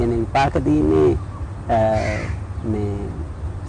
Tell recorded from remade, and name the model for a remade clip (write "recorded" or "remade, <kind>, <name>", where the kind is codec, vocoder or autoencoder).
recorded